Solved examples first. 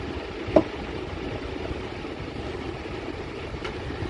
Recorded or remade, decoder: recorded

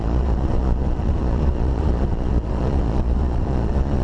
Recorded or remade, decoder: remade, vocoder, Vocos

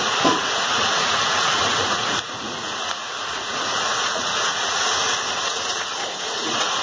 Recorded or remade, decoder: remade, vocoder, Vocos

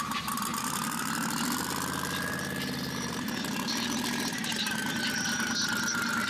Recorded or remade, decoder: recorded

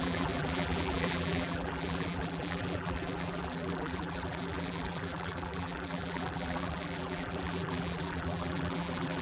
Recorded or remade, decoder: remade, vocoder, BigVGAN v2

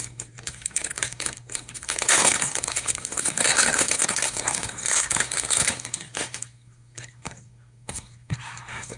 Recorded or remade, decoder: remade, codec, SNAC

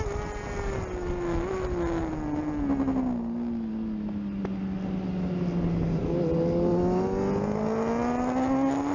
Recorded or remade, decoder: recorded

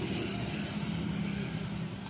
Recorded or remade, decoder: recorded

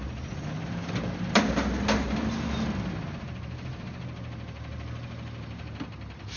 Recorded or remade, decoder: recorded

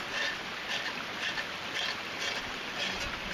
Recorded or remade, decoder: recorded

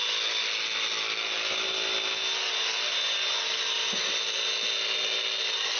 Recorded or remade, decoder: recorded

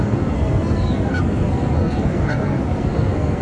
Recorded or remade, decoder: remade, codec, SNAC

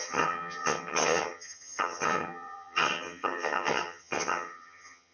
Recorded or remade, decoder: remade, vocoder, HiFi-GAN